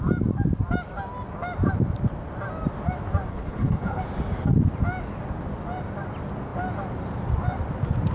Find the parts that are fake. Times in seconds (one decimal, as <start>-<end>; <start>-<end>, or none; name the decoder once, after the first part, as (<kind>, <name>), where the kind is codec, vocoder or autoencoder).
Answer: 3.3-4.0 (codec, HILCodec)